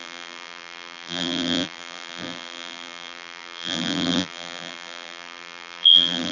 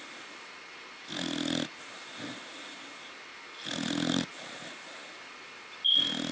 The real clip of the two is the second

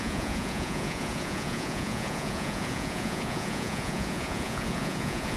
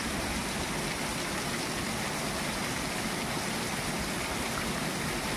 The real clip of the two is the second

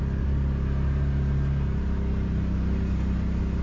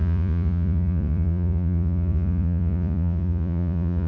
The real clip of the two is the first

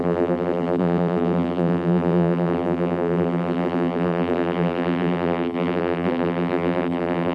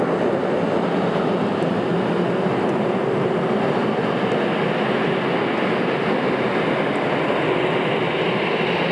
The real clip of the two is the second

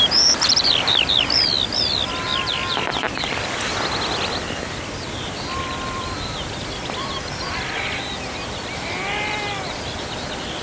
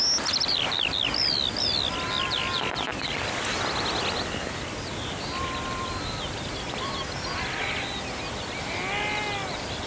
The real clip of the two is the second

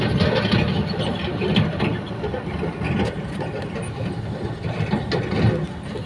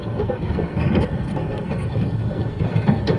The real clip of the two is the first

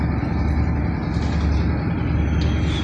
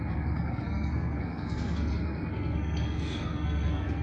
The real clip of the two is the first